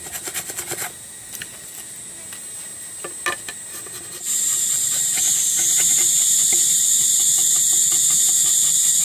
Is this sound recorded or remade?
recorded